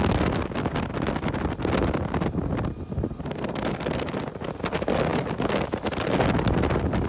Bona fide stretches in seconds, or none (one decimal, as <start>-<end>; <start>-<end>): 0.0-7.1